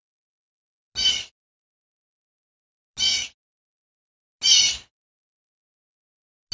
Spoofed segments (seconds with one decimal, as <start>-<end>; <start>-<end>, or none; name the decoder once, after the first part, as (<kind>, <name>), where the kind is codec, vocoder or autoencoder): none